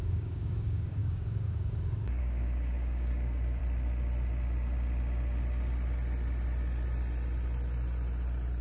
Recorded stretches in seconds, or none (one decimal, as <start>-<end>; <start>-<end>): 3.6-8.6